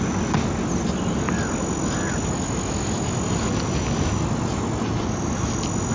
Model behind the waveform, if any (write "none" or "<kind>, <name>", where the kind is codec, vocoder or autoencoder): none